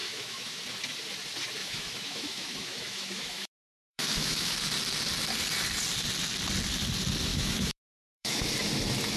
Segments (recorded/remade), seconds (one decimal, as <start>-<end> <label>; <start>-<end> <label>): 0.0-0.6 remade; 0.6-1.6 recorded; 1.6-4.6 remade; 4.6-7.3 recorded; 7.3-8.5 remade; 8.5-9.2 recorded